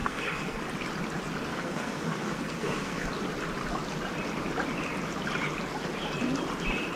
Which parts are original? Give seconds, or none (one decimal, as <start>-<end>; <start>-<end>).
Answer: 0.6-1.5; 3.1-7.0